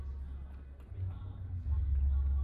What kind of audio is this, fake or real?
real